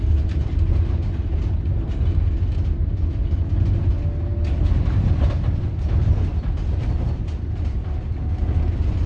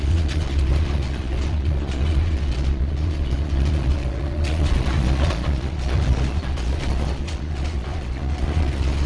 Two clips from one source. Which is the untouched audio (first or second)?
first